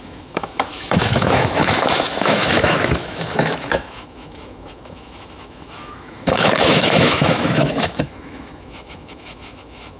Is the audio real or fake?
fake